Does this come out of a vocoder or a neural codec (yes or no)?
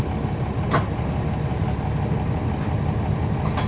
no